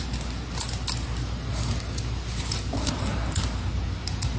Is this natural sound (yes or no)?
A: yes